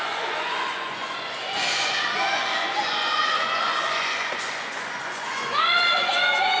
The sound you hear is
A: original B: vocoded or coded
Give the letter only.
B